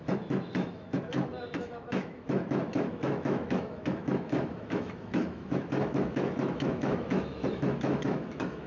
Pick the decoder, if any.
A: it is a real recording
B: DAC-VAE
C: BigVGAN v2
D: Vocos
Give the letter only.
B